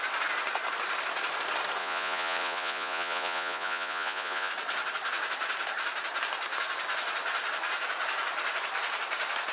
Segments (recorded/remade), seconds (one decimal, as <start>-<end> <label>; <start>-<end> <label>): 0.0-1.8 recorded; 1.8-4.5 remade; 4.5-9.5 recorded